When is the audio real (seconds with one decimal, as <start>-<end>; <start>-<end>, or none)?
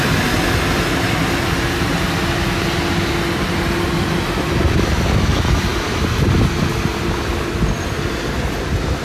0.0-9.0